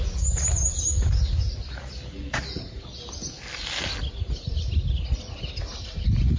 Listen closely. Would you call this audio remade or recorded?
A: recorded